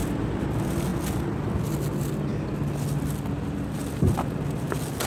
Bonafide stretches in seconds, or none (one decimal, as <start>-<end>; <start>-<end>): 0.0-5.1

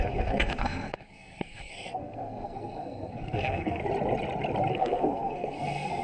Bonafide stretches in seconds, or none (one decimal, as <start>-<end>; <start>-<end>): 3.8-4.7

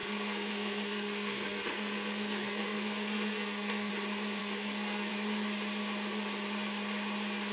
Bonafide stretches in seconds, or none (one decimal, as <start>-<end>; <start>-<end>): 3.9-4.4; 5.1-7.5